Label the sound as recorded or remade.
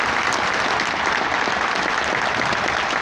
recorded